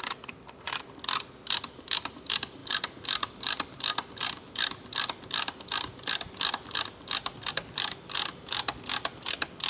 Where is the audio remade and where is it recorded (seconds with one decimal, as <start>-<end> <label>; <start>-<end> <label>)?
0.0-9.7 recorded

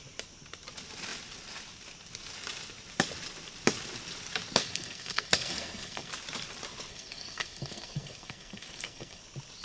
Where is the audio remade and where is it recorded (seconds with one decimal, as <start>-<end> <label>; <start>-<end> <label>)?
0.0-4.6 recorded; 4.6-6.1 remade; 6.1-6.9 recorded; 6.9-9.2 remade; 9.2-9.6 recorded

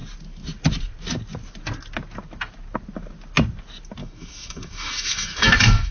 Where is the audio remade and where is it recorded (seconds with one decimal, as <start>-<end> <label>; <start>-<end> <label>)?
0.0-4.0 recorded; 4.0-5.9 remade

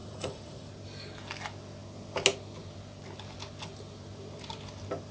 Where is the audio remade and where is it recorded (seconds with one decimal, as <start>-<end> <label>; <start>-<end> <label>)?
0.0-0.7 remade; 0.7-5.1 recorded